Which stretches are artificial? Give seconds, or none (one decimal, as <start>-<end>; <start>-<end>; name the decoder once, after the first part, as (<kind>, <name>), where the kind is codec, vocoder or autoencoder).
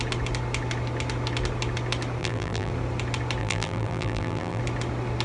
2.2-2.7 (vocoder, BigVGAN v2); 3.4-4.6